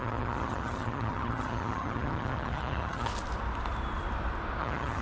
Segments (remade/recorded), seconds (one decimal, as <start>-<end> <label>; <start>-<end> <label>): 0.0-3.1 remade; 3.1-4.6 recorded; 4.6-5.0 remade